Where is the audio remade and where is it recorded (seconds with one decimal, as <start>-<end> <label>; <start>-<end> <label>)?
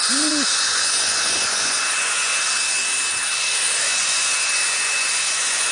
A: 0.0-2.3 remade; 2.3-3.9 recorded; 3.9-5.7 remade